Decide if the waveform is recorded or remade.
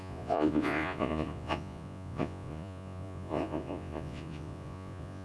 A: remade